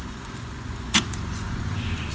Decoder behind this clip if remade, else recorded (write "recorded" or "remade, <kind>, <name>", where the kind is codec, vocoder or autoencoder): remade, vocoder, Vocos